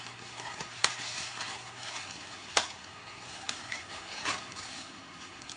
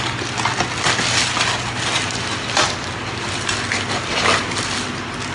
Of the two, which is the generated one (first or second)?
first